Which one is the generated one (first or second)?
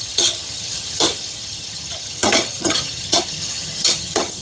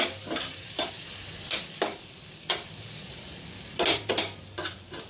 first